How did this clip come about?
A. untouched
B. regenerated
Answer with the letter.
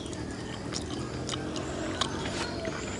A